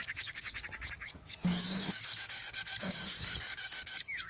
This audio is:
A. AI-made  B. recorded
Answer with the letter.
A